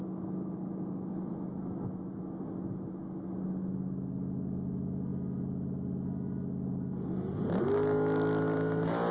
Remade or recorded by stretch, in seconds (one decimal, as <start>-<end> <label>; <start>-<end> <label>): 0.0-9.1 recorded